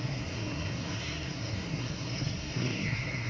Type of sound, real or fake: fake